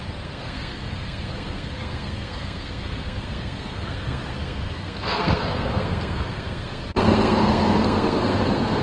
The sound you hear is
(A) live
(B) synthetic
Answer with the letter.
B